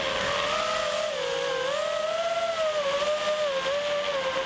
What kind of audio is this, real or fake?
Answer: real